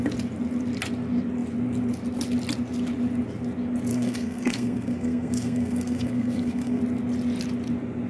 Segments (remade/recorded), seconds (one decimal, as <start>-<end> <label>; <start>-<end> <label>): 0.0-3.9 recorded; 3.9-6.8 remade; 6.8-8.1 recorded